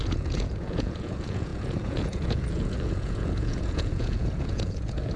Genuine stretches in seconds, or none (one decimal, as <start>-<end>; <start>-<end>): none